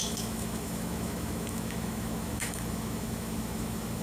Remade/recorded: remade